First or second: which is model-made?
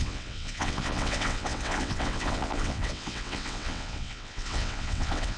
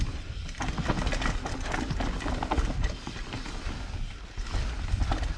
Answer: first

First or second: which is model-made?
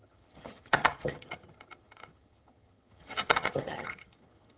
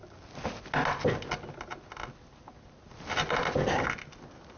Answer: first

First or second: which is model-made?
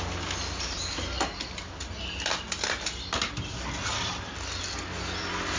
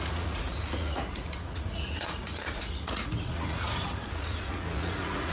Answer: second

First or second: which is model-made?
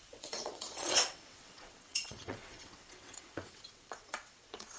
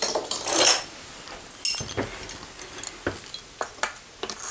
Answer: first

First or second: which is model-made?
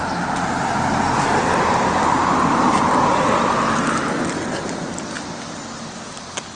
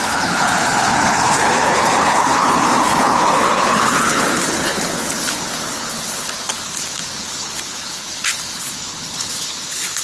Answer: second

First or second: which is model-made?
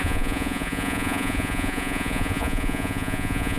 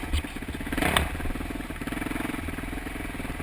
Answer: first